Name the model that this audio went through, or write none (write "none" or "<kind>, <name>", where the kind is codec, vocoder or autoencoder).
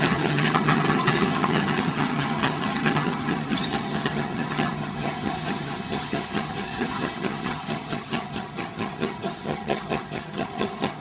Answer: vocoder, HiFi-GAN